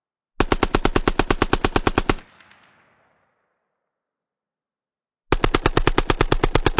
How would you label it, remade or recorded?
recorded